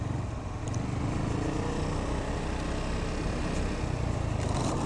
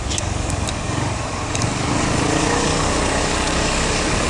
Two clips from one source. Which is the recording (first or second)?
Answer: first